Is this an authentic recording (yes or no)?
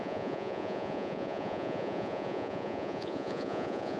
no